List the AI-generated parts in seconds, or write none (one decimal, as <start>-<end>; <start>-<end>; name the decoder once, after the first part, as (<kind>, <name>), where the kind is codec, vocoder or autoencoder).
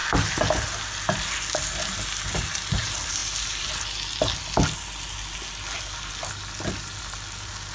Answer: none